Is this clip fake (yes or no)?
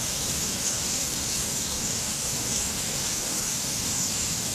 yes